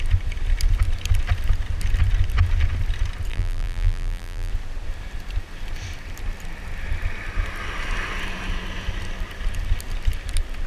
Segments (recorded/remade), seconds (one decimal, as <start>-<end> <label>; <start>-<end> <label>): 0.0-3.3 recorded; 3.3-4.5 remade; 4.5-10.7 recorded

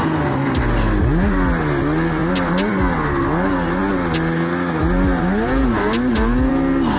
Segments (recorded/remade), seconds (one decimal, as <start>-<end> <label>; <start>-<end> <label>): 0.0-7.0 recorded

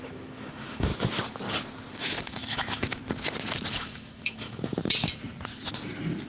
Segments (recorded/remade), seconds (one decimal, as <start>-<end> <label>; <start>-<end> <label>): 0.0-0.9 remade; 0.9-1.9 recorded; 1.9-3.0 remade; 3.0-3.7 recorded; 3.7-4.8 remade; 4.8-6.3 recorded

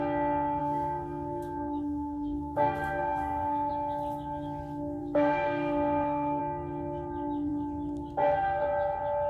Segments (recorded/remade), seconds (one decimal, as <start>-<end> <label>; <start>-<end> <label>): 0.0-0.6 recorded; 0.6-3.7 remade; 3.7-5.0 recorded; 5.0-6.4 remade; 6.4-9.3 recorded

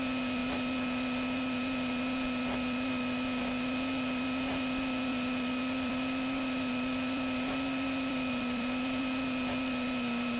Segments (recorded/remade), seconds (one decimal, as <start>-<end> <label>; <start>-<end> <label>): 0.0-5.1 recorded; 5.1-9.0 remade; 9.0-10.4 recorded

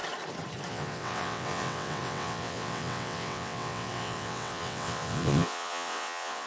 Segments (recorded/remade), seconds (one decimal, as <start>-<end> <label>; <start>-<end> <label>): 0.0-0.7 recorded; 0.7-6.5 remade